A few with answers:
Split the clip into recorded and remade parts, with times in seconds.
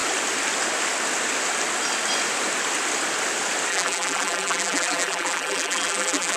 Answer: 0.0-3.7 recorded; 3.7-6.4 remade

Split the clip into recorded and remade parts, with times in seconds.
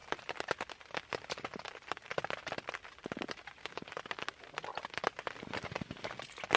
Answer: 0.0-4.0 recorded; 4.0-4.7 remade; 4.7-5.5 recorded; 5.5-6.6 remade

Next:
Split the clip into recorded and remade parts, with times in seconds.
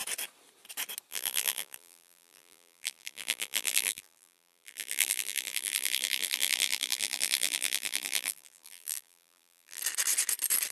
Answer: 0.0-1.1 recorded; 1.1-9.8 remade; 9.8-10.7 recorded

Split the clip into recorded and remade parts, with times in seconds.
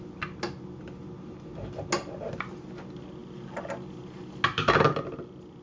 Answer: 0.0-5.6 recorded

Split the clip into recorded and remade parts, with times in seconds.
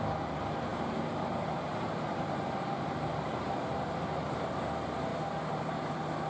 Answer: 0.0-0.7 recorded; 0.7-4.5 remade; 4.5-5.1 recorded; 5.1-5.8 remade; 5.8-6.3 recorded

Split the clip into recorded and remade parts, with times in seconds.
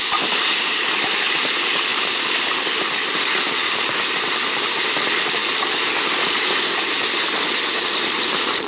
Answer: 0.0-5.4 remade; 5.4-6.9 recorded; 6.9-8.7 remade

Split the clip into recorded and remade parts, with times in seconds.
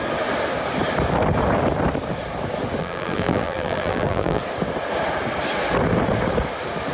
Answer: 0.0-2.8 recorded; 2.8-4.4 remade; 4.4-6.9 recorded